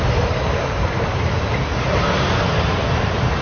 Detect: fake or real fake